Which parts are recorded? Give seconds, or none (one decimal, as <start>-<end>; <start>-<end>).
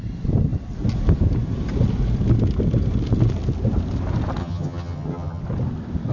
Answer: 0.0-4.4; 5.4-6.1